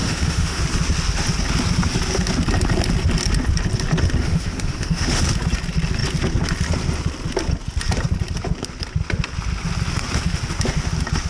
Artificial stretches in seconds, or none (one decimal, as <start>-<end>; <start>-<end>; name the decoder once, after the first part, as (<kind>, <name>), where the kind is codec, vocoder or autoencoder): 0.0-0.6 (autoencoder, DAC-VAE); 4.2-5.2